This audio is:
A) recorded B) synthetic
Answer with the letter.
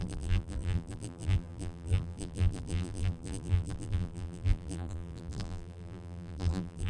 B